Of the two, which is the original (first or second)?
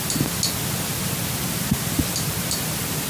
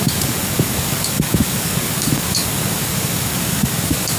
first